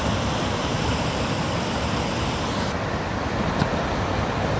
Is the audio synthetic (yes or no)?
no